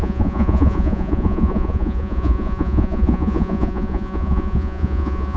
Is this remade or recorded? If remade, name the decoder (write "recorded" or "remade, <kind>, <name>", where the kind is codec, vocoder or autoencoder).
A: remade, vocoder, Vocos